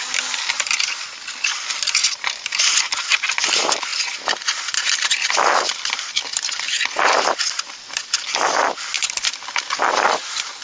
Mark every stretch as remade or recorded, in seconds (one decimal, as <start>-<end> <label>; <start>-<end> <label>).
0.0-10.6 recorded